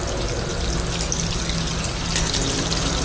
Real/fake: real